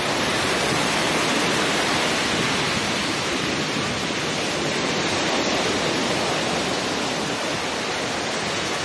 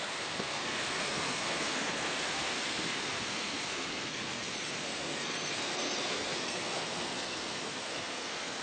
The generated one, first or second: second